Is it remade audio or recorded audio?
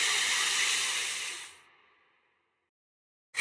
recorded